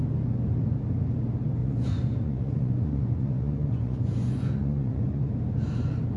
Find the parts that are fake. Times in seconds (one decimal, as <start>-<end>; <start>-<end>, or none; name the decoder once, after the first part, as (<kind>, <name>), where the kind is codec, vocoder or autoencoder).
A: 1.6-5.3 (vocoder, Vocos)